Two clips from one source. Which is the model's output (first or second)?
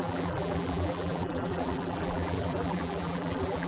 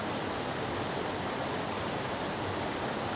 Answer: first